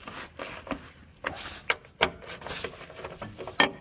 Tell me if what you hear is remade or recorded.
recorded